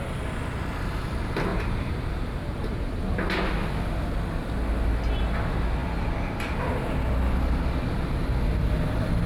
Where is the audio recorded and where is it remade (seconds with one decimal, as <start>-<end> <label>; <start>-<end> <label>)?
0.0-1.5 recorded; 1.5-3.0 remade; 3.0-9.3 recorded